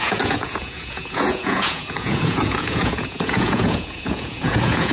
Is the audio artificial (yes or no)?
yes